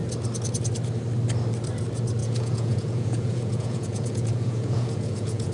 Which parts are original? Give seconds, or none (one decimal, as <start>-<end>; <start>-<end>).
0.0-2.2